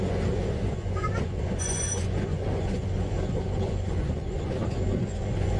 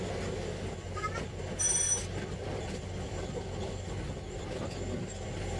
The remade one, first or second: first